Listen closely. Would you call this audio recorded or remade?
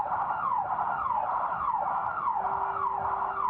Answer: recorded